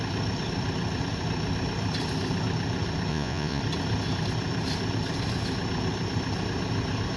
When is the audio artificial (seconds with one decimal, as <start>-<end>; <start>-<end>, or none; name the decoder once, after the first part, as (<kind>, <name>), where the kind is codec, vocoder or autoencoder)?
3.1-3.6 (vocoder, Vocos)